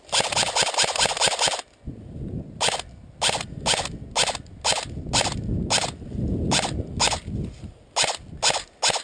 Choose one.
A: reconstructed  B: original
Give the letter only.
B